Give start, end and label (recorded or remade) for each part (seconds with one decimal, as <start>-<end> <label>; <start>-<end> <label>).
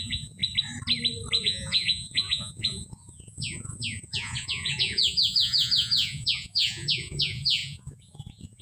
0.0-0.4 remade; 0.4-1.4 recorded; 1.4-8.6 remade